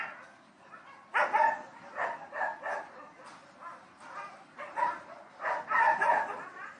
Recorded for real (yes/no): yes